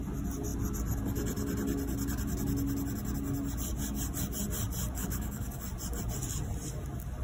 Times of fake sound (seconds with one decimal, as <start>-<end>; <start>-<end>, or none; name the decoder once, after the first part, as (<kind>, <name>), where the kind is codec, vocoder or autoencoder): 5.0-5.6 (codec, DAC)